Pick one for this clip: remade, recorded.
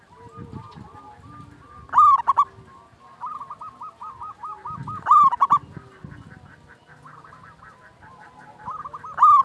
recorded